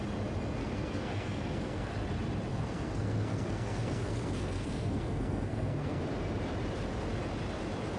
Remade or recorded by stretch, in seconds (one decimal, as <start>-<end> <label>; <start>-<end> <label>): 0.0-0.6 recorded; 0.6-1.9 remade; 1.9-2.5 recorded; 2.5-6.0 remade; 6.0-8.0 recorded